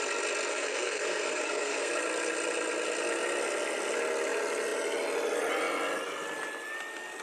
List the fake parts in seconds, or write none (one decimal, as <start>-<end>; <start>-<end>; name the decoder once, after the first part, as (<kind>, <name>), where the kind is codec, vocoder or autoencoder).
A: 0.5-1.9 (codec, SNAC)